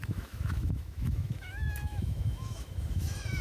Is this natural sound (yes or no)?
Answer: no